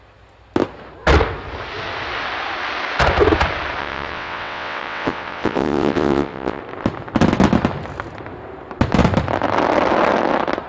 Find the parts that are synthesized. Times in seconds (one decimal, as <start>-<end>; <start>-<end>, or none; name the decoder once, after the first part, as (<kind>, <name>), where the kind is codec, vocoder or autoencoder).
3.8-6.6 (vocoder, WaveNeXt)